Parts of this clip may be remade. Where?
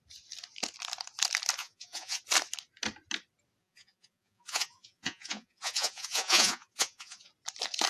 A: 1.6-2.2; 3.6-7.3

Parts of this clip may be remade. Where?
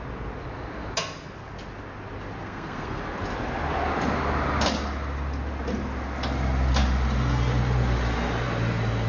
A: 2.4-3.0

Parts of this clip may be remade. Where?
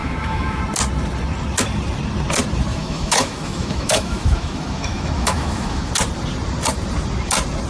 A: 0.0-0.6; 2.7-5.9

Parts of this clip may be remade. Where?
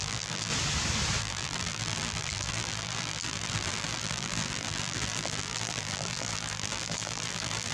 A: 0.0-0.5; 1.2-7.7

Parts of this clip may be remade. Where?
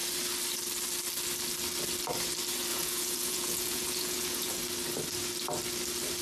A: 2.7-4.6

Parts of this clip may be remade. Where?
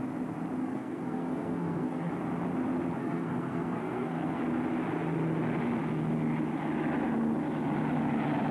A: 0.6-2.1; 3.0-4.4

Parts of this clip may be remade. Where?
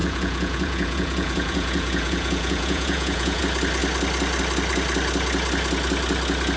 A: 0.0-3.4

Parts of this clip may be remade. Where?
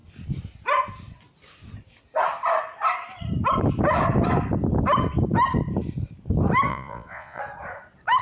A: 6.7-7.4